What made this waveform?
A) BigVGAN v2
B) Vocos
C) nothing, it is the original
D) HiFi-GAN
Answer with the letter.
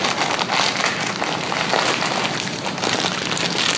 C